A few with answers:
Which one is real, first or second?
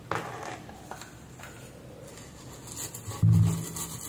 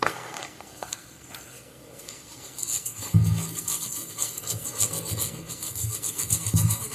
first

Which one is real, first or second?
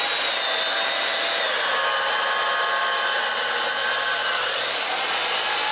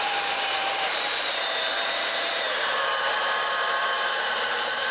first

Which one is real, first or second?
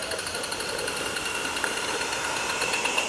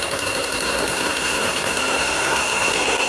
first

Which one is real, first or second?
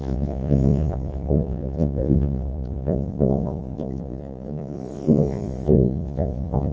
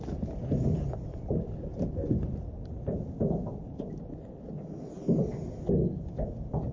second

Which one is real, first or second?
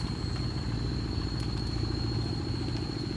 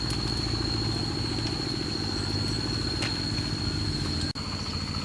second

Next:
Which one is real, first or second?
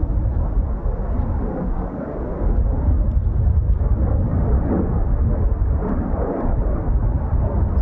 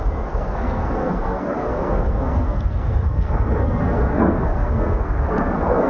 first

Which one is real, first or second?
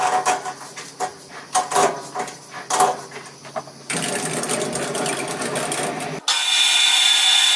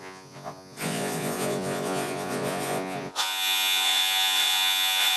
first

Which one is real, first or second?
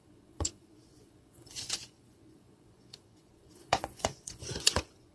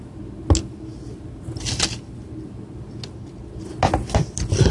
second